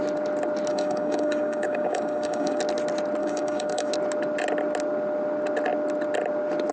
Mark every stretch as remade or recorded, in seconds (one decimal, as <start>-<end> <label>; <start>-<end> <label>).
0.0-0.7 recorded; 0.7-2.6 remade; 2.6-3.2 recorded; 3.2-3.9 remade; 3.9-6.7 recorded